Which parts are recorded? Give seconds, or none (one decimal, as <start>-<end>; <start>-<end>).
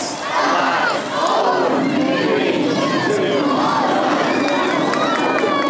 0.0-5.7